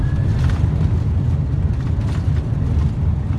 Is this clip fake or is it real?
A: real